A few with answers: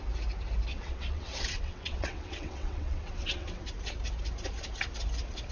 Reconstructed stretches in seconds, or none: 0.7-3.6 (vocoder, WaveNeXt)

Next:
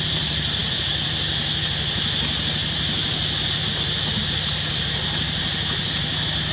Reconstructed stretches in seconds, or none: none

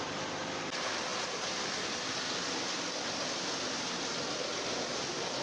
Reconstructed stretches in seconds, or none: none

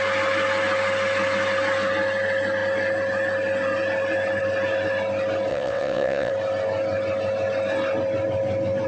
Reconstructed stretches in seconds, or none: 5.5-6.3 (vocoder, WaveNeXt)

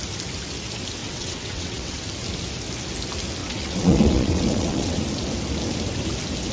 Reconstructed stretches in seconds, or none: 1.0-2.0 (vocoder, WaveNeXt); 3.4-5.0

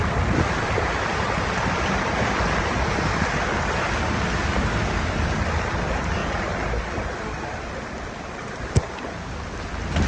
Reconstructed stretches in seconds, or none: none